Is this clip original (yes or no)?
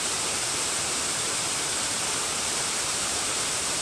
no